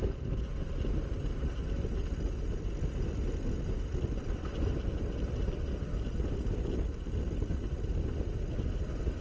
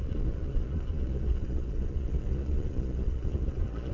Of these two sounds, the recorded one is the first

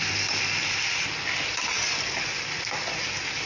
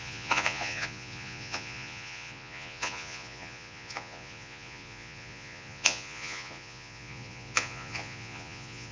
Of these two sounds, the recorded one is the first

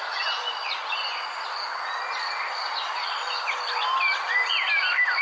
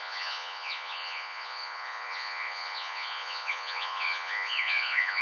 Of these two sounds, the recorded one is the first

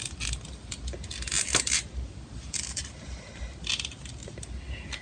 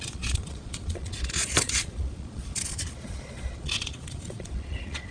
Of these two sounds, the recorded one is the first